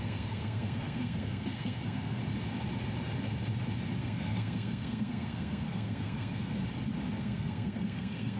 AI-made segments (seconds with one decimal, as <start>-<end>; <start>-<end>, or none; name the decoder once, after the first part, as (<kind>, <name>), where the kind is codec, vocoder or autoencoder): 0.0-2.2 (codec, SNAC); 4.0-6.6; 7.2-8.4